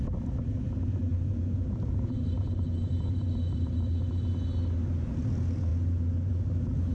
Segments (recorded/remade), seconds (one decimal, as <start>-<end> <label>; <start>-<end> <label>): 0.0-1.1 recorded; 1.1-4.1 remade; 4.1-5.7 recorded; 5.7-6.3 remade; 6.3-6.9 recorded